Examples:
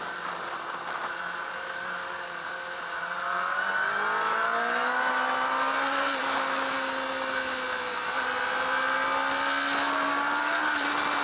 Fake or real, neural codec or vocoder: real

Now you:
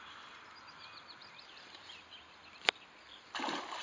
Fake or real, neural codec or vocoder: real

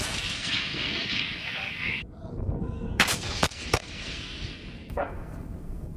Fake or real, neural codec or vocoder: fake, codec, SNAC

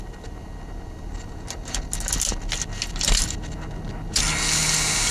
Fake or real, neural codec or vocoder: real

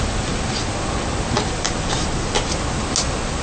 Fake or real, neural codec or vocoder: real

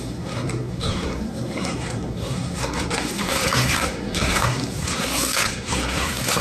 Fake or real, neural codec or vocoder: fake, codec, SNAC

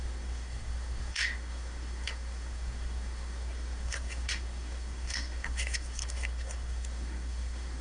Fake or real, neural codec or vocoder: fake, codec, SNAC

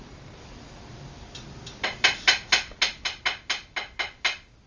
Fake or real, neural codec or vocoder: real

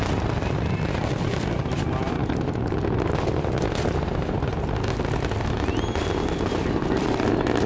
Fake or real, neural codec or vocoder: real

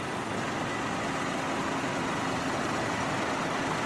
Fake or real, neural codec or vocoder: real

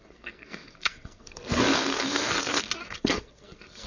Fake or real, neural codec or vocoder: fake, codec, SNAC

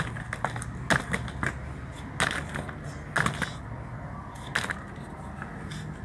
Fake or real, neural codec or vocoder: real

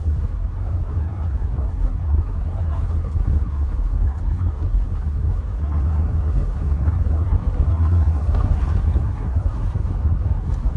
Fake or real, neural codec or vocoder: fake, codec, SNAC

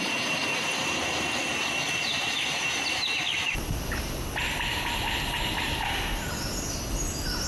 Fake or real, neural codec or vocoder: real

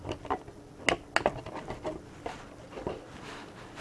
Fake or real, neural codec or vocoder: real